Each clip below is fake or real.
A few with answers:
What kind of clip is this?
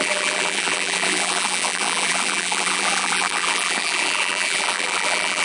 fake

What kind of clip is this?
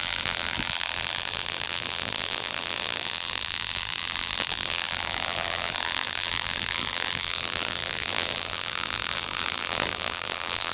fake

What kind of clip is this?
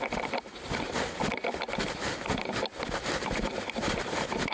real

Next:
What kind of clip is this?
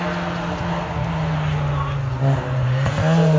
real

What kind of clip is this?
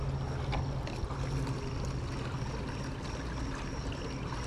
real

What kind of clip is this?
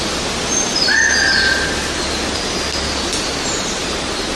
real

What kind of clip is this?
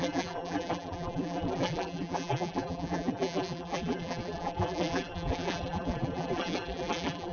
fake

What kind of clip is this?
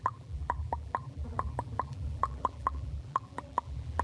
fake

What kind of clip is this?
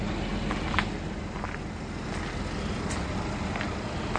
real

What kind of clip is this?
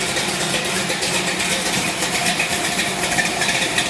fake